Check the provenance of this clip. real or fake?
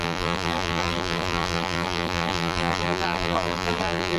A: fake